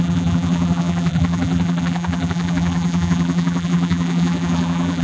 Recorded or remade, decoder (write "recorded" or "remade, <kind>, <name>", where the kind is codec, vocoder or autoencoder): remade, vocoder, BigVGAN v2